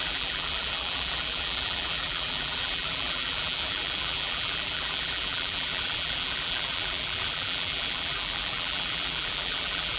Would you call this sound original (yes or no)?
no